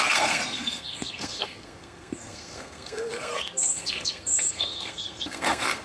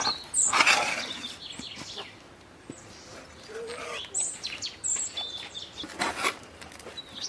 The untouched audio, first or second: second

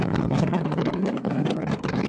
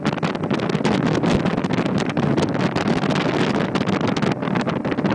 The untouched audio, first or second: second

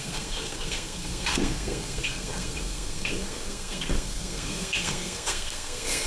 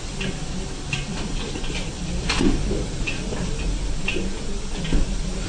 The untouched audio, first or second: second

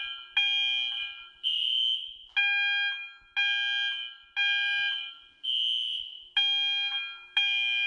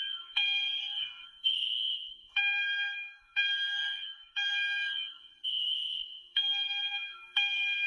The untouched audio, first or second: first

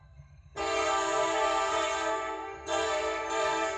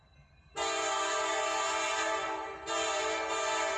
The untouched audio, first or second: second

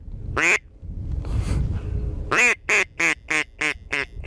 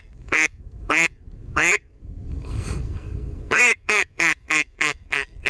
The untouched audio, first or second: first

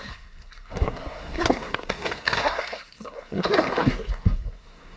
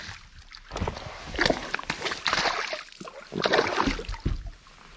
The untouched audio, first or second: second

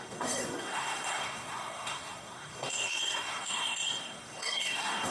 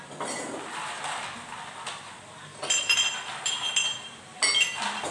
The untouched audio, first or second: second